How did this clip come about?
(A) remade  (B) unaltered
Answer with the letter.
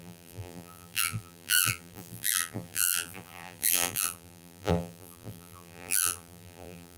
A